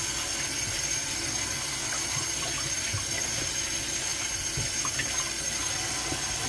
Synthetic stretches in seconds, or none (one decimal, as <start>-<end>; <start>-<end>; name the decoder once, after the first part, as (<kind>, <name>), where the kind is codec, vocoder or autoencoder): none